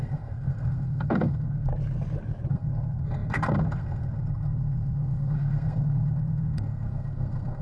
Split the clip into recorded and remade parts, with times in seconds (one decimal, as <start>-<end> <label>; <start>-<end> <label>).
0.0-1.7 remade; 1.7-2.5 recorded; 2.5-7.6 remade